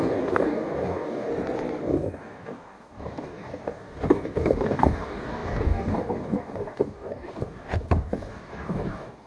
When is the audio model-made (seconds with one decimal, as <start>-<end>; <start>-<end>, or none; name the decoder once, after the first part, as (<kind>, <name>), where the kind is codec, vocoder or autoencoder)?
0.0-1.3 (codec, DAC); 1.8-9.3